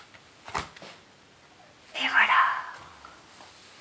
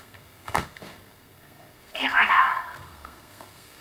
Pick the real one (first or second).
first